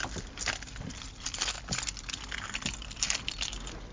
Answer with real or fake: real